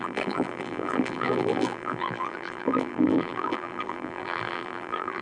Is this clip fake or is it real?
fake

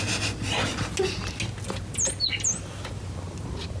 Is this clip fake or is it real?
real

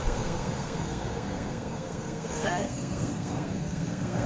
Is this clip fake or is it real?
fake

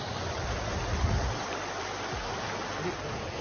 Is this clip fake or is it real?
real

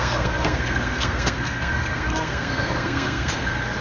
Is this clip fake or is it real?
fake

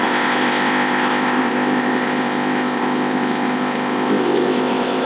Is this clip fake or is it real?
fake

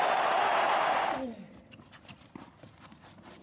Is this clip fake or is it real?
real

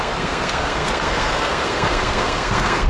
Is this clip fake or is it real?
fake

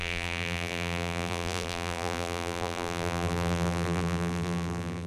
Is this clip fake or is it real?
fake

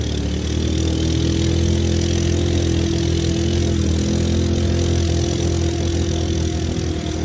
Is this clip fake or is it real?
real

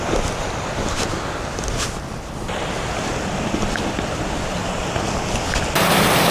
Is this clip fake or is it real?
real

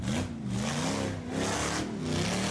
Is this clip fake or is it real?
real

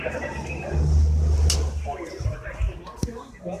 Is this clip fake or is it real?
real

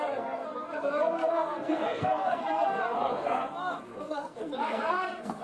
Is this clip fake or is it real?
fake